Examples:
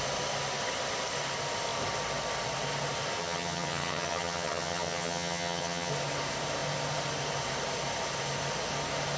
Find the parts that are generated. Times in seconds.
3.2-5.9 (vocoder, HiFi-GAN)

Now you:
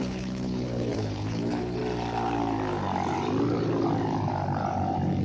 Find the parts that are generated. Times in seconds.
0.0-1.8 (codec, HILCodec)